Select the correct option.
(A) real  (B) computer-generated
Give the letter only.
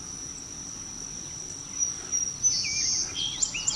A